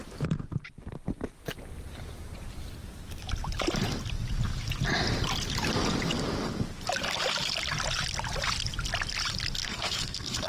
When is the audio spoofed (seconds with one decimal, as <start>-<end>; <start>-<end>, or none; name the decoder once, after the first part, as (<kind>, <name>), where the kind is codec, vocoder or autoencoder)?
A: 9.6-10.5 (codec, SNAC)